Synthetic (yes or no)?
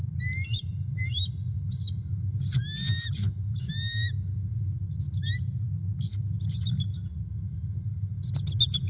no